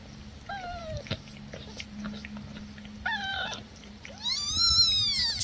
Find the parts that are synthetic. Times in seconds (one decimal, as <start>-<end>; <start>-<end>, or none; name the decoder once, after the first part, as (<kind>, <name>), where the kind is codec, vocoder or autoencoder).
3.3-4.7 (vocoder, BigVGAN v2)

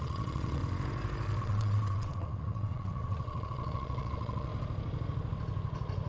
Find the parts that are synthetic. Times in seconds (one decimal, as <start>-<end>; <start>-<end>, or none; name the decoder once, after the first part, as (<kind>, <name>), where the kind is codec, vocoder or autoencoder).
0.0-0.6 (vocoder, WaveNeXt); 1.4-4.5

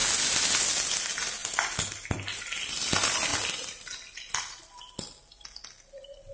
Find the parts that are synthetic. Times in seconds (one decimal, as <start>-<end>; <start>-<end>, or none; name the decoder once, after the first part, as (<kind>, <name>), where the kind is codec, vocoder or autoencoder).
none

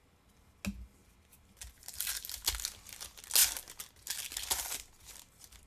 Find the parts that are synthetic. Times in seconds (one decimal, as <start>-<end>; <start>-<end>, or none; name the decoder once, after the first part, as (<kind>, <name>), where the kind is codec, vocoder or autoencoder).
none

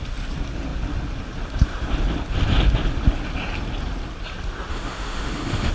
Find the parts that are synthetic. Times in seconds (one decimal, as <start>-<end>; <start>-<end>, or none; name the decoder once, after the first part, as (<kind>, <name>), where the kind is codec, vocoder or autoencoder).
4.7-5.7 (autoencoder, DAC-VAE)